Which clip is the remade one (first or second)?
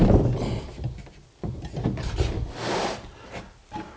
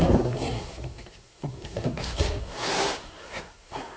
second